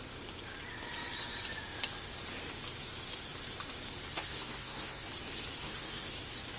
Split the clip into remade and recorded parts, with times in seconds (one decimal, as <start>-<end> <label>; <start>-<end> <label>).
0.0-4.1 recorded; 4.1-5.1 remade; 5.1-5.6 recorded; 5.6-6.1 remade; 6.1-6.6 recorded